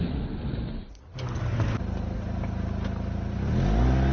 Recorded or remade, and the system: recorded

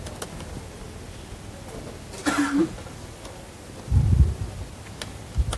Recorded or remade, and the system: recorded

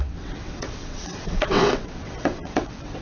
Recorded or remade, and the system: remade, vocoder, WaveNeXt